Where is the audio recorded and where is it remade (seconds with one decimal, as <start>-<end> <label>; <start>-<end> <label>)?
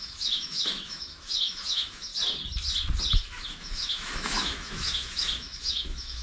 0.0-2.1 remade; 2.1-3.2 recorded; 3.2-6.2 remade